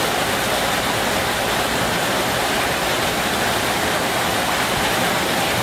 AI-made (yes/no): no